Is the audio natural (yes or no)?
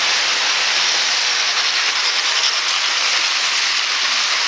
yes